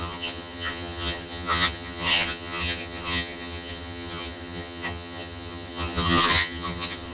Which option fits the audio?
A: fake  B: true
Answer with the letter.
A